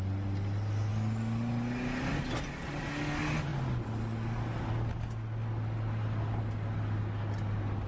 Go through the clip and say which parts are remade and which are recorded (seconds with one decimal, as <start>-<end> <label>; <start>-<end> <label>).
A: 0.0-7.9 recorded